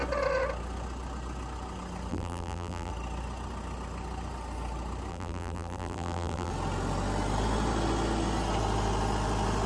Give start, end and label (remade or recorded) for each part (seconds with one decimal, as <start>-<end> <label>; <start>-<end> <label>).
0.0-2.1 recorded; 2.1-2.9 remade; 2.9-5.1 recorded; 5.1-6.5 remade; 6.5-9.7 recorded